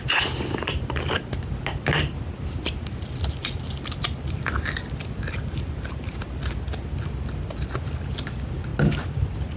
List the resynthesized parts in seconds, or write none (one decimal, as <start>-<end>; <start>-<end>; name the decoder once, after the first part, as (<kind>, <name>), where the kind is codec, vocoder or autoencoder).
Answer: none